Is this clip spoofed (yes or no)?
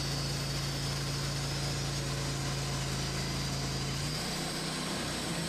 no